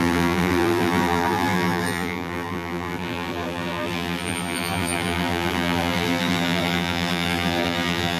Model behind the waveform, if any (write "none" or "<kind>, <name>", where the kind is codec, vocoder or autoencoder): vocoder, BigVGAN v2